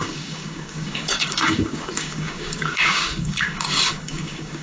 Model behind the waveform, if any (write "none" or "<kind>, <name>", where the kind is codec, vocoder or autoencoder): codec, DAC